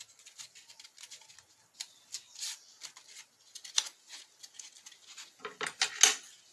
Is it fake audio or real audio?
real